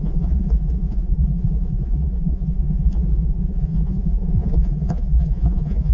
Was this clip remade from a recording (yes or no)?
yes